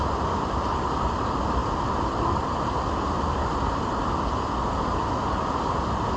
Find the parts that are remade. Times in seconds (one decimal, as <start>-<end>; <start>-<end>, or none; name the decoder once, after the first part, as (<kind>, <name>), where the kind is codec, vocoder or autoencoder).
none